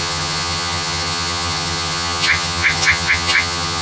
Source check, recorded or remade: remade